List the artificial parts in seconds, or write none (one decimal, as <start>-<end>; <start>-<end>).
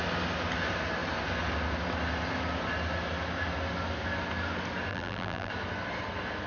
4.9-5.5